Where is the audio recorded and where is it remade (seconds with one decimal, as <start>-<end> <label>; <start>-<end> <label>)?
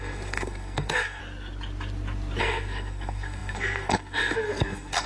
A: 0.0-1.2 remade; 1.2-2.4 recorded; 2.4-5.1 remade